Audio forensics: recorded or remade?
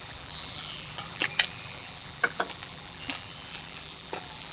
remade